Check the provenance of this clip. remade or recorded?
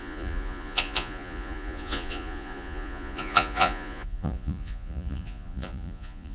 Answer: remade